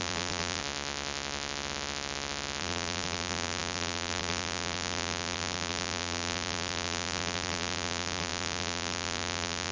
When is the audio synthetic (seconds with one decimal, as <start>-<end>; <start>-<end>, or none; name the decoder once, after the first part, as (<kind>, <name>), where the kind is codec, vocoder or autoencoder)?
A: 0.0-0.6 (vocoder, BigVGAN v2); 2.6-9.7